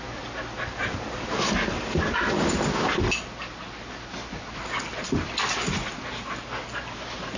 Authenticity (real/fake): real